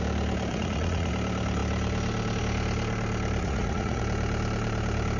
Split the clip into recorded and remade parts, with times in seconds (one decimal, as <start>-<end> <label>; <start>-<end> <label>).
0.0-0.5 recorded; 0.5-1.1 remade; 1.1-3.4 recorded; 3.4-4.0 remade; 4.0-5.2 recorded